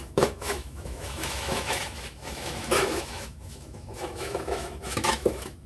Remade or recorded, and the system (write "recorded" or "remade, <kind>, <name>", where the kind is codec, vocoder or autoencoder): remade, autoencoder, DAC-VAE